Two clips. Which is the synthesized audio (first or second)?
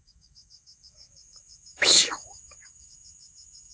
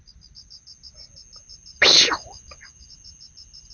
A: first